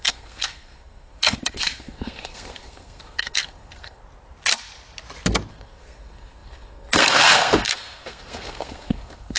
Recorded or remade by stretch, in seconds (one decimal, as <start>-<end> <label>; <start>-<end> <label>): 0.0-4.0 remade; 4.0-5.5 recorded; 5.5-9.4 remade